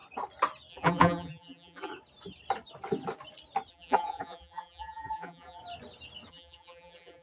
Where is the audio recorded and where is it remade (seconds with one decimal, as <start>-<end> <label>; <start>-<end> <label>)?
0.0-0.7 recorded; 0.7-1.9 remade; 1.9-3.7 recorded; 3.7-5.6 remade; 5.6-6.3 recorded; 6.3-7.2 remade